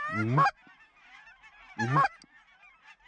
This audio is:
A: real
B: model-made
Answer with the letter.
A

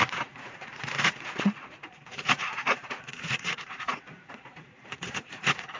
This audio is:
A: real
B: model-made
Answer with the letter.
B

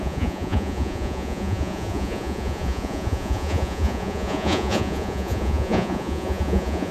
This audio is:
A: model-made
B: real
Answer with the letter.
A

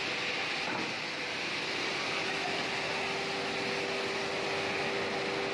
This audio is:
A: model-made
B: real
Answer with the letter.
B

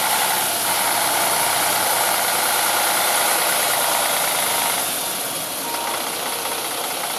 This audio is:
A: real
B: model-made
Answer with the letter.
A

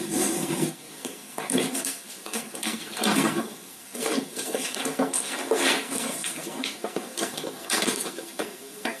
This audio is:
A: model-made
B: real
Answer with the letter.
A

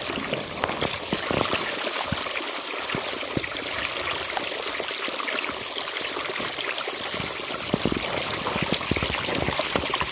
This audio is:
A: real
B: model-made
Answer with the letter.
A